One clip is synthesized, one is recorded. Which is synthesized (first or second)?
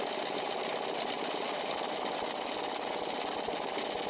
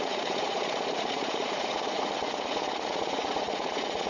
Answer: second